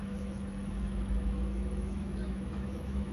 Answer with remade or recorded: remade